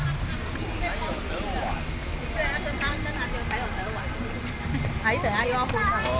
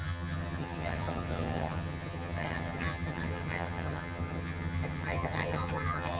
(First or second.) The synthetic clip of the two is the second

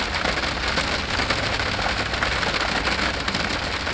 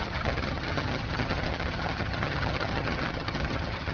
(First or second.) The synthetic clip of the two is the second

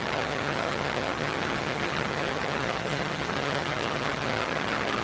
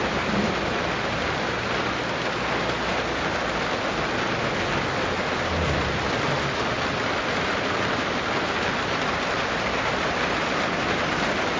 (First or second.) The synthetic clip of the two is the first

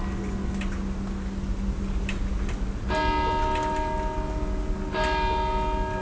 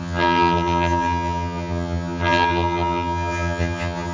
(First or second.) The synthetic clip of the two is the second